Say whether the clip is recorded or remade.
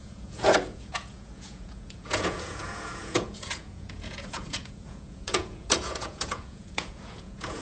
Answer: remade